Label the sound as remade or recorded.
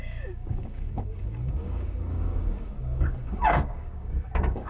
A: remade